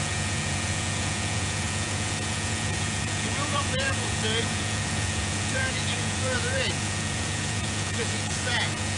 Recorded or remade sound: remade